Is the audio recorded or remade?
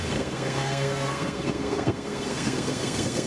remade